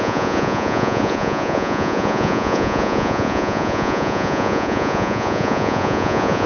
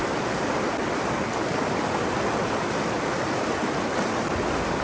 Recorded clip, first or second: second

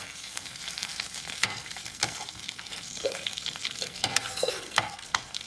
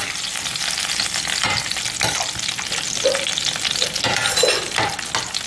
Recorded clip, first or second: second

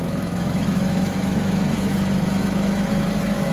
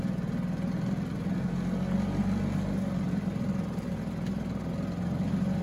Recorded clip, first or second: second